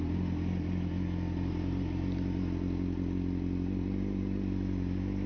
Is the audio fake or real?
real